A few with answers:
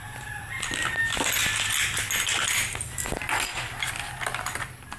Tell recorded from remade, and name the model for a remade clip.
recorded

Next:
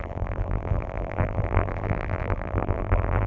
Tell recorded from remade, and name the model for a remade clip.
remade, vocoder, BigVGAN v2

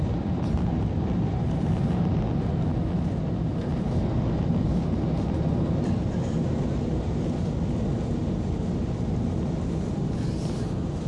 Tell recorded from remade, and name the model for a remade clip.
recorded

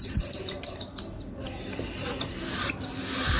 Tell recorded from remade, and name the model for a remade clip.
recorded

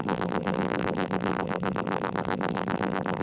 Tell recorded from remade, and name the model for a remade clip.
remade, vocoder, BigVGAN v2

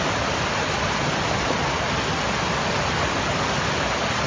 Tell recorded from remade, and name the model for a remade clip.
recorded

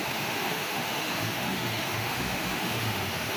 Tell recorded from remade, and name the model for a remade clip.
remade, autoencoder, DAC-VAE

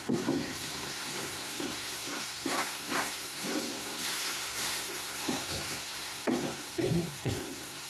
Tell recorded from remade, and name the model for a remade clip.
remade, codec, SNAC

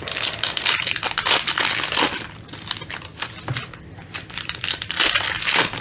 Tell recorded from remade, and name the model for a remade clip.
remade, vocoder, BigVGAN v2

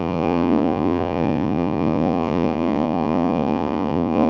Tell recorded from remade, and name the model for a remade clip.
remade, vocoder, Vocos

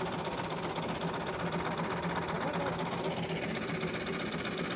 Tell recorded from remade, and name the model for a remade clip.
recorded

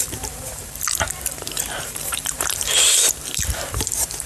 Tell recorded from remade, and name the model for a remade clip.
remade, vocoder, BigVGAN v2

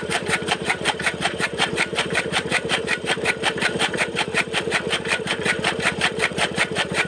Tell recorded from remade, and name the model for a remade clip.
remade, vocoder, BigVGAN v2